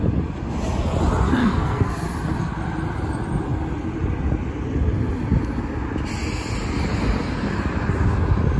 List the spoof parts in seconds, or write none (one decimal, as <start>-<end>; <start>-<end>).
1.4-1.9